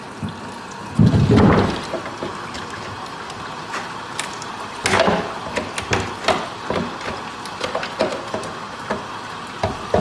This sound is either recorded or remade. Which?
recorded